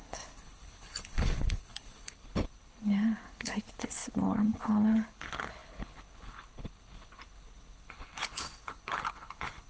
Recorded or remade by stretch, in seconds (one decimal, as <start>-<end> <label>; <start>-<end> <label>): 0.0-9.7 remade